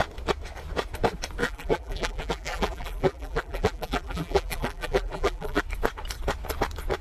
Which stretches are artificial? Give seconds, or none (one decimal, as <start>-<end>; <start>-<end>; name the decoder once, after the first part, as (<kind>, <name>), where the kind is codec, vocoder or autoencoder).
1.4-5.6 (vocoder, BigVGAN v2)